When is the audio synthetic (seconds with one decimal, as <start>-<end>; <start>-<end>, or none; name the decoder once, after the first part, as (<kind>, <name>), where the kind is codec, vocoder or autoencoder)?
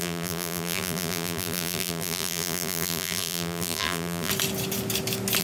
0.0-4.3 (vocoder, BigVGAN v2)